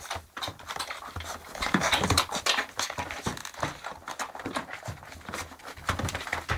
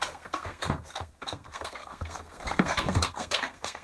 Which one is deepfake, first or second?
second